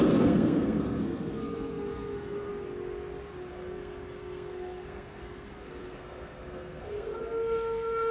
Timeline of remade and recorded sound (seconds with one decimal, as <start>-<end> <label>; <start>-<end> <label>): 0.0-2.5 remade; 2.5-3.5 recorded; 3.5-8.1 remade